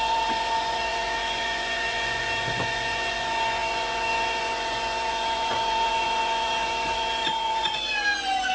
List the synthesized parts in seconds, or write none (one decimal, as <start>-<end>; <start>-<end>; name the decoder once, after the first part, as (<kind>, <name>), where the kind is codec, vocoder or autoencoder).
0.0-8.5 (vocoder, Vocos)